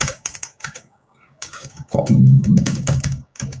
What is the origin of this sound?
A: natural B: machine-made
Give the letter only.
B